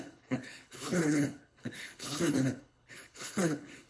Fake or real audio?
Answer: fake